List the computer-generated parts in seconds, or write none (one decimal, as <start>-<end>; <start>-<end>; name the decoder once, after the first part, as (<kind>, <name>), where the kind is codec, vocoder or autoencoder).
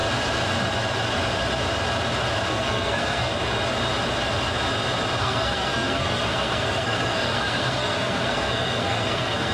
2.5-3.3 (codec, SNAC); 5.2-9.5